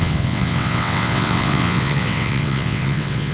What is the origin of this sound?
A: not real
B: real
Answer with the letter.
A